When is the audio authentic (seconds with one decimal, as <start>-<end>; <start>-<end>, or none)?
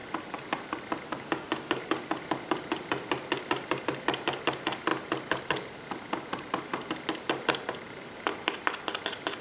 0.0-9.4